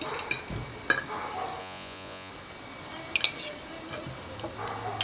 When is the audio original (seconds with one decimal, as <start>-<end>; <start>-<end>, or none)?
0.0-1.6; 2.3-5.0